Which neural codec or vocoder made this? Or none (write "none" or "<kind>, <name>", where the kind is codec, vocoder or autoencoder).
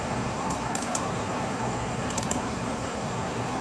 codec, SNAC